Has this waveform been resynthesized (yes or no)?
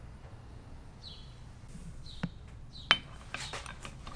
no